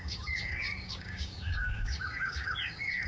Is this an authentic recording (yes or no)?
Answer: no